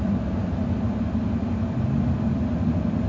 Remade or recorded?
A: recorded